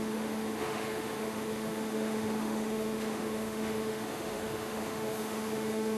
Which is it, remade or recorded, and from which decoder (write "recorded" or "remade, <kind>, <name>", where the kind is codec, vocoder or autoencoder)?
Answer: remade, autoencoder, DAC-VAE